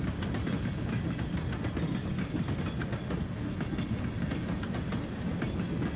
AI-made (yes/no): no